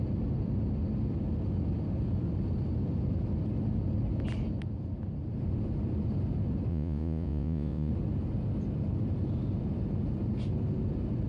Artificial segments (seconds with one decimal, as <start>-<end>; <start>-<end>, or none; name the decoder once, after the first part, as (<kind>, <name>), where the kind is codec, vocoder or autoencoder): 6.7-7.9 (vocoder, Vocos)